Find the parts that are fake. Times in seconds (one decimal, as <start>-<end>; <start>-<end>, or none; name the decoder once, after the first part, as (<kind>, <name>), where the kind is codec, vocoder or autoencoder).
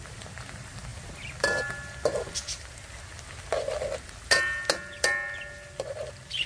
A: none